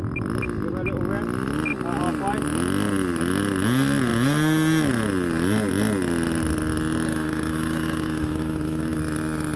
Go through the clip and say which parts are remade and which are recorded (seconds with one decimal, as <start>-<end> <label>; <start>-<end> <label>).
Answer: 0.0-7.1 recorded; 7.1-9.0 remade; 9.0-9.6 recorded